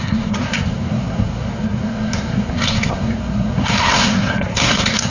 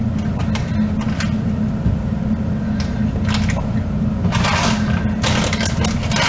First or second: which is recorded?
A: second